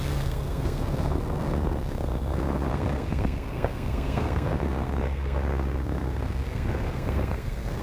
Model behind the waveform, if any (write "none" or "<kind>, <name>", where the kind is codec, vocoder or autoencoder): codec, SNAC